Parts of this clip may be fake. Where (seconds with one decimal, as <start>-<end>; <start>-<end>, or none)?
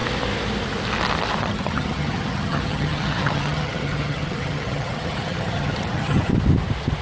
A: 1.4-6.3